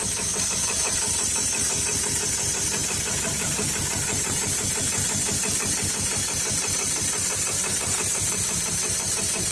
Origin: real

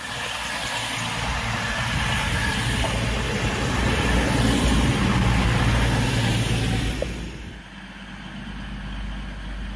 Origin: real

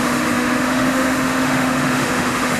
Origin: fake